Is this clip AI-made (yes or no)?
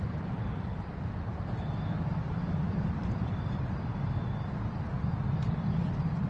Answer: yes